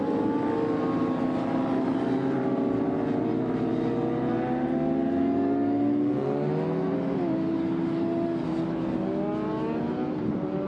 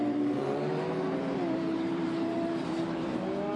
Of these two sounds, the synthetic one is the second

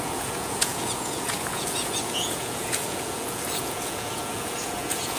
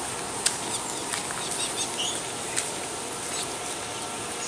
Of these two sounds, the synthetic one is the first